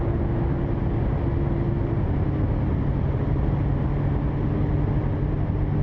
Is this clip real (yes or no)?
yes